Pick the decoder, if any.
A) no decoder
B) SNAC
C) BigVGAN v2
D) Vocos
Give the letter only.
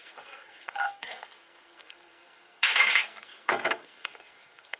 B